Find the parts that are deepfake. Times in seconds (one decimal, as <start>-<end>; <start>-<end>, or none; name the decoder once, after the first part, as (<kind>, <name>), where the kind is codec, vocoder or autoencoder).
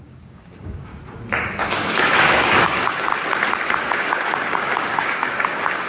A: 0.0-0.9 (codec, DAC); 1.6-3.1; 3.9-5.9